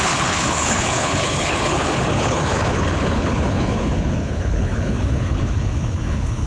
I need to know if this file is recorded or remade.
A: remade